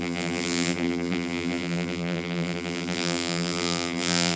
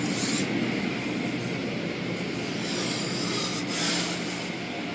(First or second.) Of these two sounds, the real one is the second